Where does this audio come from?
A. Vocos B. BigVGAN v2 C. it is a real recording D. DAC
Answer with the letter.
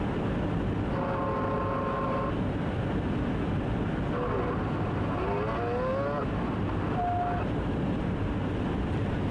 C